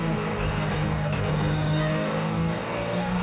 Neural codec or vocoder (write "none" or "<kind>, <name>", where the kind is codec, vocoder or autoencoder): codec, DAC